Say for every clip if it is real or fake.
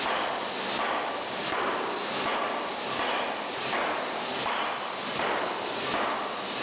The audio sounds fake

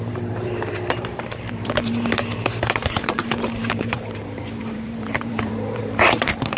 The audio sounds fake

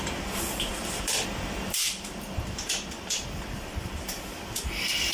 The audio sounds fake